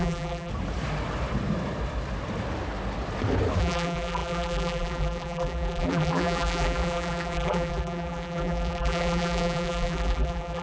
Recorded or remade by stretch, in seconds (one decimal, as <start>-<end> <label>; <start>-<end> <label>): 0.0-0.5 remade; 0.5-3.6 recorded; 3.6-10.6 remade

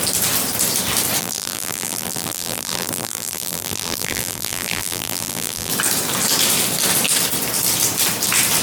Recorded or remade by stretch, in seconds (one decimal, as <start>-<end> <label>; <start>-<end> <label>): 0.0-1.2 recorded; 1.2-5.7 remade; 5.7-8.6 recorded

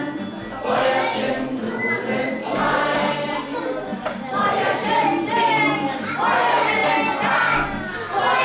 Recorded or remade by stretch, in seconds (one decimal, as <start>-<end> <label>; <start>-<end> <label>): 0.0-3.9 recorded; 3.9-5.5 remade; 5.5-8.4 recorded

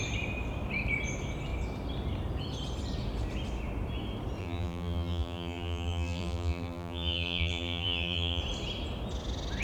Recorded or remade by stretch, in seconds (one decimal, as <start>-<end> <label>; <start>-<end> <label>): 0.0-4.4 recorded; 4.4-8.4 remade; 8.4-9.6 recorded

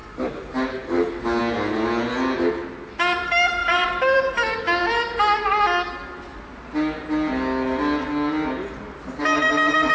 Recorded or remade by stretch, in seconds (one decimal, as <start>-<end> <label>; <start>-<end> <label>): 0.0-1.4 remade; 1.4-3.6 recorded; 3.6-4.6 remade; 4.6-9.9 recorded

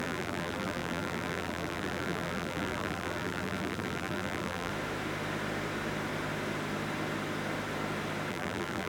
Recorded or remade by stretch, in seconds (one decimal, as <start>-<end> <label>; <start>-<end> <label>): 0.0-4.7 remade; 4.7-8.3 recorded; 8.3-8.9 remade